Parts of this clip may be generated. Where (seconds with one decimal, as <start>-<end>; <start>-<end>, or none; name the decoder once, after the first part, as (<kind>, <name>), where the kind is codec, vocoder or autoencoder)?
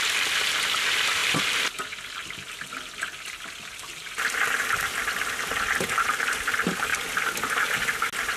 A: none